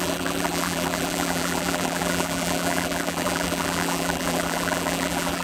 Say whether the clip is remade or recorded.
remade